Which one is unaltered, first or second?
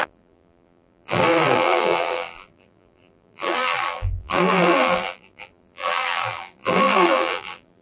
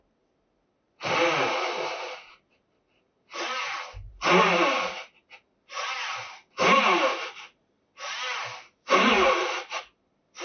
second